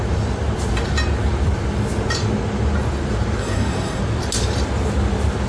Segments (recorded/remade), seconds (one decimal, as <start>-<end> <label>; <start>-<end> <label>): 0.0-3.4 recorded; 3.4-4.0 remade; 4.0-5.5 recorded

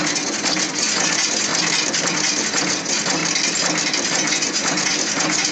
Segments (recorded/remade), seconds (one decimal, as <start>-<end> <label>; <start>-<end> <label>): 0.0-1.5 remade; 1.5-2.1 recorded; 2.1-3.2 remade; 3.2-4.1 recorded; 4.1-5.5 remade

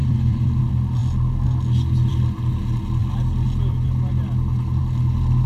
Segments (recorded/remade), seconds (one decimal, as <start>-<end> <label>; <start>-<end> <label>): 0.0-0.6 remade; 0.6-5.5 recorded